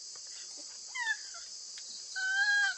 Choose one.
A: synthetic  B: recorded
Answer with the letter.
B